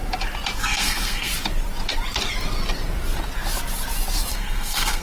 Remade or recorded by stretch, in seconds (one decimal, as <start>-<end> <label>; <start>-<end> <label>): 0.0-0.6 recorded; 0.6-1.3 remade; 1.3-4.3 recorded; 4.3-5.0 remade